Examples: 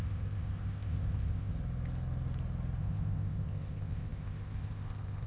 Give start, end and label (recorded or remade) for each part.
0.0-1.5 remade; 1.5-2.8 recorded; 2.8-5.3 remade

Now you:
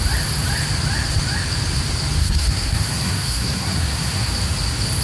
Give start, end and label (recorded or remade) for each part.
0.0-2.2 recorded; 2.2-4.3 remade; 4.3-5.0 recorded

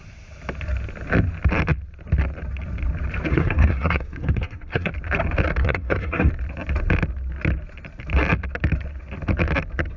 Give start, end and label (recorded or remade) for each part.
0.0-3.3 recorded; 3.3-4.9 remade; 4.9-5.6 recorded; 5.6-6.3 remade; 6.3-10.0 recorded

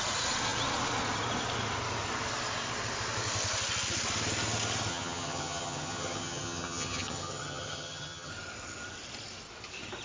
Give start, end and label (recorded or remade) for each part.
0.0-4.9 recorded; 4.9-8.3 remade; 8.3-10.0 recorded

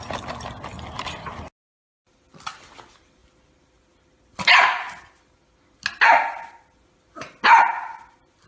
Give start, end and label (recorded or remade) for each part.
0.0-8.5 recorded

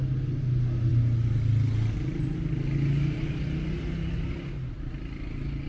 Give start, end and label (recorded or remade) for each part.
0.0-5.7 recorded

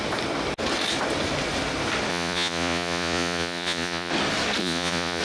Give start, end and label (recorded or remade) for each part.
0.0-2.1 recorded; 2.1-4.1 remade; 4.1-4.6 recorded; 4.6-5.2 remade